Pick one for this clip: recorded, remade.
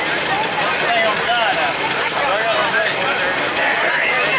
recorded